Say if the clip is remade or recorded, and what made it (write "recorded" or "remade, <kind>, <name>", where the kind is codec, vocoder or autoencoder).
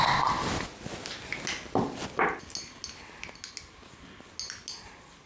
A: recorded